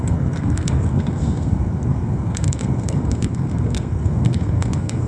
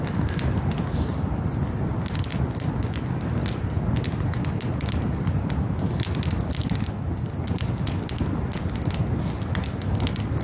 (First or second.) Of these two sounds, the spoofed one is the first